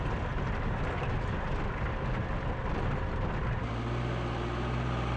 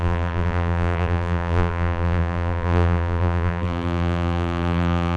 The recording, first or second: first